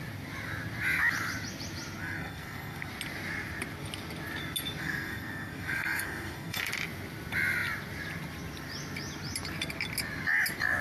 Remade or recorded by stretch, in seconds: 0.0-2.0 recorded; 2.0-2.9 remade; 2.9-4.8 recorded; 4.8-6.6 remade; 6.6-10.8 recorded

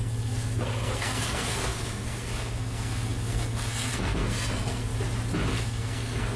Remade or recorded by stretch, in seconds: 0.0-4.9 remade; 4.9-5.5 recorded; 5.5-6.4 remade

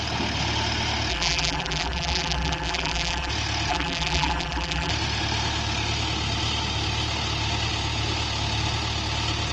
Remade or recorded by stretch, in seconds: 0.0-1.1 recorded; 1.1-3.3 remade; 3.3-3.7 recorded; 3.7-4.9 remade; 4.9-9.5 recorded

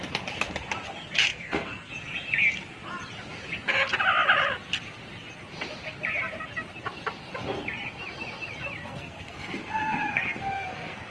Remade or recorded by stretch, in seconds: 0.0-1.3 recorded; 1.3-1.9 remade; 1.9-8.8 recorded; 8.8-11.1 remade

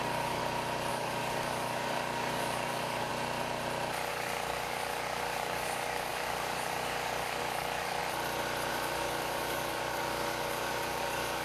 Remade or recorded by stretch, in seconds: 0.0-0.4 remade; 0.4-0.9 recorded; 0.9-3.1 remade; 3.1-4.1 recorded; 4.1-8.0 remade; 8.0-8.7 recorded; 8.7-11.4 remade

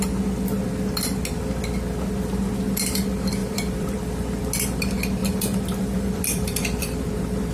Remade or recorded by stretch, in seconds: 0.0-3.4 recorded; 3.4-4.4 remade; 4.4-5.2 recorded; 5.2-7.1 remade; 7.1-7.5 recorded

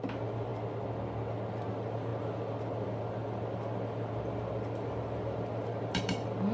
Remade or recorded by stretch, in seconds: 0.0-0.5 remade; 0.5-1.7 recorded; 1.7-6.5 remade